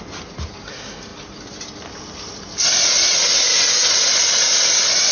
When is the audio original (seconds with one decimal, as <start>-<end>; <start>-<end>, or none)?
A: 0.0-5.1